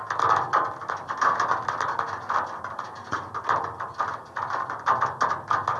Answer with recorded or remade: recorded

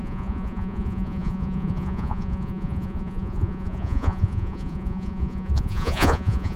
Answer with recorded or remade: remade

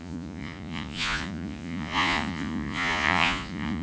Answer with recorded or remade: remade